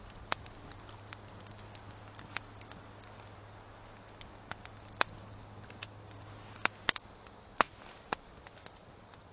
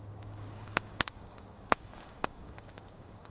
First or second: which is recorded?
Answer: first